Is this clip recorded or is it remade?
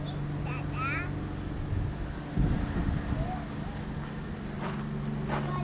recorded